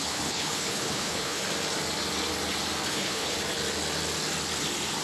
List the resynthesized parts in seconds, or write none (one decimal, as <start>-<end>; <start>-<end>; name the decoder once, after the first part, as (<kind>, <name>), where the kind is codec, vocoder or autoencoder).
0.0-1.4 (codec, HILCodec); 2.9-3.3

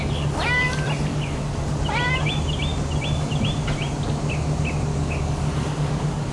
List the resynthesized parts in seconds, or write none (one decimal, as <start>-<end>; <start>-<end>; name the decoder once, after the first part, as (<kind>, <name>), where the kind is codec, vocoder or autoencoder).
1.1-1.7 (codec, DAC); 4.9-6.3

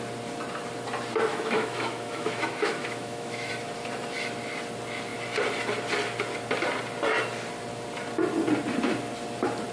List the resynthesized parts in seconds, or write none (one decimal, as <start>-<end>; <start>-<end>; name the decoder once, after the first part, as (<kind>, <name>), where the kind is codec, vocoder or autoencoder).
1.3-3.5 (autoencoder, DAC-VAE)

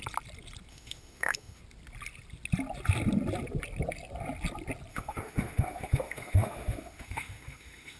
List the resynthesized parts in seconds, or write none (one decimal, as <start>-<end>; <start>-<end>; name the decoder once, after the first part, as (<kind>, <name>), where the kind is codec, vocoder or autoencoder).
0.7-1.6 (autoencoder, DAC-VAE); 4.9-8.0

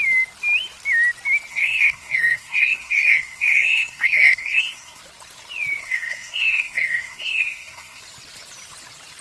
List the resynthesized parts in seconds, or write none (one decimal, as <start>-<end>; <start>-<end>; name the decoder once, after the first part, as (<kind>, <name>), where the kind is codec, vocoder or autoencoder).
1.5-5.0 (codec, SNAC); 5.8-8.0

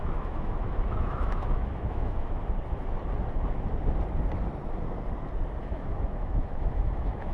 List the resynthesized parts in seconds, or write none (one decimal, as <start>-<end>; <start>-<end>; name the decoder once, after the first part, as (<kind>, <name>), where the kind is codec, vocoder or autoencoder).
0.0-2.4 (autoencoder, DAC-VAE); 5.6-7.3

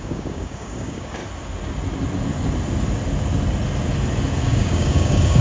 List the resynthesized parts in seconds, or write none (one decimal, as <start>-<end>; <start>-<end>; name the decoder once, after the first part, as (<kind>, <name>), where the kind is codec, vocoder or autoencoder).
0.0-1.2 (codec, DAC); 4.4-5.4

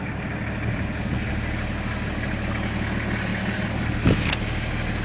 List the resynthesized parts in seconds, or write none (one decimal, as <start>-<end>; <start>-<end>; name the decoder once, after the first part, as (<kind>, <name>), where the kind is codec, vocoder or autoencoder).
none